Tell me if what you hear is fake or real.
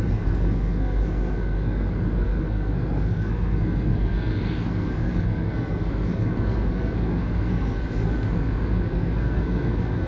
fake